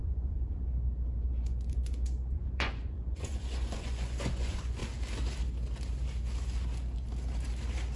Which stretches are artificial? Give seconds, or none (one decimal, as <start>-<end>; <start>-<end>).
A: 0.0-4.8